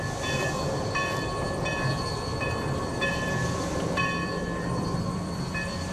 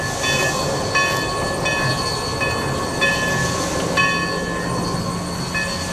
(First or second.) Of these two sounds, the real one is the second